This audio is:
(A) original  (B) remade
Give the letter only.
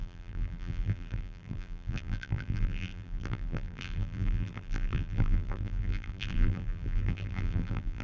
B